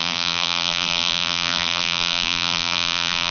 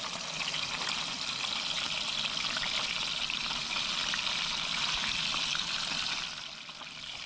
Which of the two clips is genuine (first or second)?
second